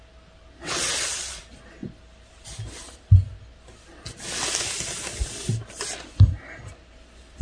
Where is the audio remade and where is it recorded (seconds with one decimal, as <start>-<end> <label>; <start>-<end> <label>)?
0.0-0.6 recorded; 0.6-1.4 remade; 1.4-7.4 recorded